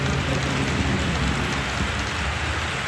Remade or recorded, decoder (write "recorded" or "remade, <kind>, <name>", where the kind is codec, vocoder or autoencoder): recorded